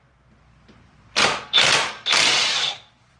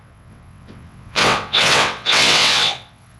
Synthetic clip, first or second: second